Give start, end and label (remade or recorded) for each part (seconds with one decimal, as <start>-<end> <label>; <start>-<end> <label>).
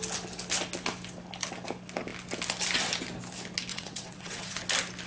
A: 0.0-3.7 recorded; 3.7-4.6 remade; 4.6-5.1 recorded